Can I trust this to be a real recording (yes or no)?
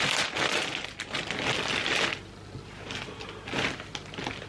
yes